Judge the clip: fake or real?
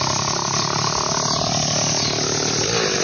real